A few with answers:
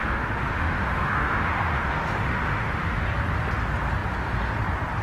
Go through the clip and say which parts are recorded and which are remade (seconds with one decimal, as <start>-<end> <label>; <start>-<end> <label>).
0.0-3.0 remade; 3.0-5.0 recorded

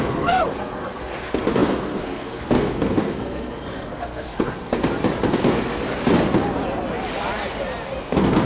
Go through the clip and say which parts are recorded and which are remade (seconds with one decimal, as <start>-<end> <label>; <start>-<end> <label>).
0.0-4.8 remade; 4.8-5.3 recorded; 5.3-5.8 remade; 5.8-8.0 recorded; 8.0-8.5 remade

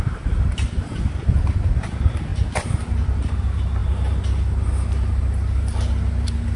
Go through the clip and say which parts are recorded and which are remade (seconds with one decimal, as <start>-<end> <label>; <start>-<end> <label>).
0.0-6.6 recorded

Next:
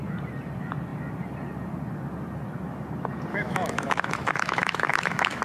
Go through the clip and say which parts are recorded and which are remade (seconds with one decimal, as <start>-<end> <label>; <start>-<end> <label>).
0.0-3.3 recorded; 3.3-5.4 remade